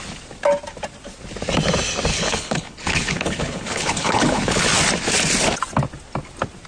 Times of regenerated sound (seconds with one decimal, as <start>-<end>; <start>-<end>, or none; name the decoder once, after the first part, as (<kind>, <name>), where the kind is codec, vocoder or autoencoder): 2.1-4.6 (codec, HILCodec)